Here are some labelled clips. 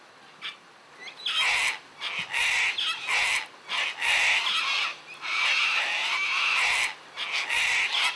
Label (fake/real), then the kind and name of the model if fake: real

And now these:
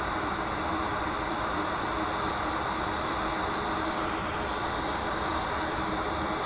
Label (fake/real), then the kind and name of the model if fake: fake, vocoder, BigVGAN v2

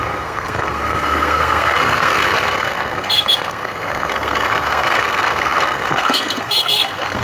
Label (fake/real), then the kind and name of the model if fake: fake, codec, SNAC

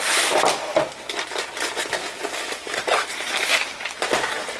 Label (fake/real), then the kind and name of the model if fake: real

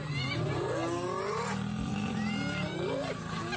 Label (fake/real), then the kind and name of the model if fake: real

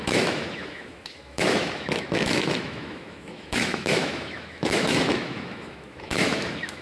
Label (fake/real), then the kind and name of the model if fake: fake, autoencoder, DAC-VAE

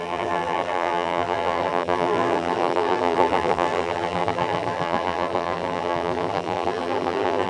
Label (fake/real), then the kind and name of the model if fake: fake, vocoder, BigVGAN v2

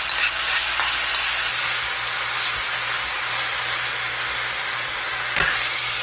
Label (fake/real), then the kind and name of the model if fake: real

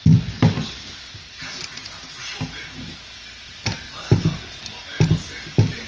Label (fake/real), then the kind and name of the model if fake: real